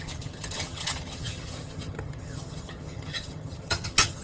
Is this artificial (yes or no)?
yes